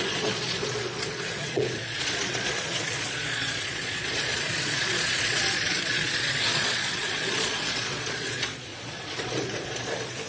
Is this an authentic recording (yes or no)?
no